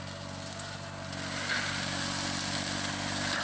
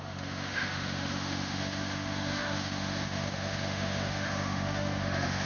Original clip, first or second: first